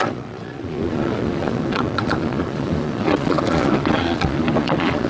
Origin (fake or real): fake